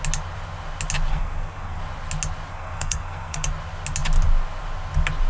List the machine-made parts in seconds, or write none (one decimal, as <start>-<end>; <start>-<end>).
1.1-1.8; 2.5-3.5